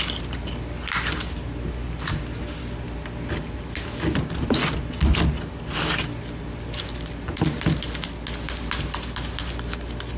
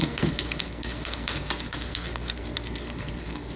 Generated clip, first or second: second